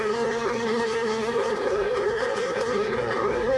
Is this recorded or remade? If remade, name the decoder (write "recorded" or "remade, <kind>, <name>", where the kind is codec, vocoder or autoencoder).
remade, codec, SNAC